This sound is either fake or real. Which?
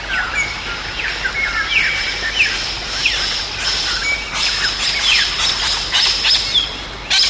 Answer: real